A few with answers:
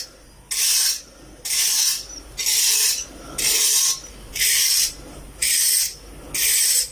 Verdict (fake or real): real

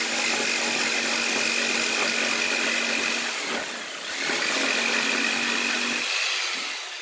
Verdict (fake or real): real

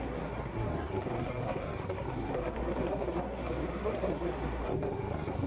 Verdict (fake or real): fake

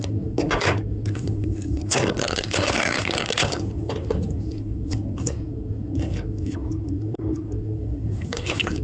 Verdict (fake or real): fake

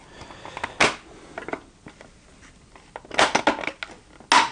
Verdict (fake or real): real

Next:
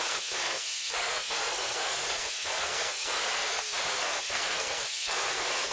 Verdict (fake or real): fake